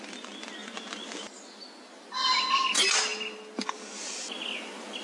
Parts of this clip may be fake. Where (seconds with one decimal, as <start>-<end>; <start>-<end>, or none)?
none